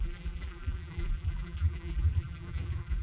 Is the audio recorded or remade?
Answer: remade